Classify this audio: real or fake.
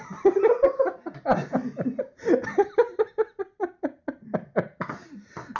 real